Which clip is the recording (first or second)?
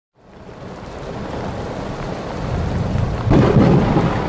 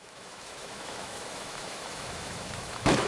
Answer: first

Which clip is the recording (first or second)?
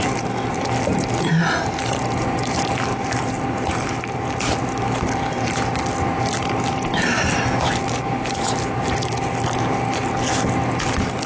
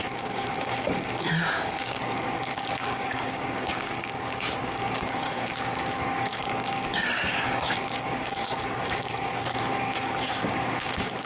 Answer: first